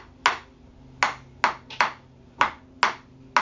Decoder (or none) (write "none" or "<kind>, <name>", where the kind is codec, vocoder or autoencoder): none